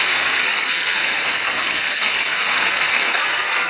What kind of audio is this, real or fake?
fake